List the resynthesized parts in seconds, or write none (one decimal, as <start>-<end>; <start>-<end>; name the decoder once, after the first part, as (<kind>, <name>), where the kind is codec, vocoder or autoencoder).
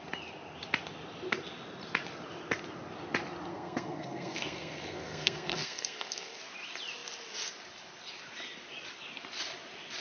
3.5-6.4 (codec, SNAC)